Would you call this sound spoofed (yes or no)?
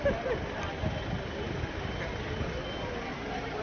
no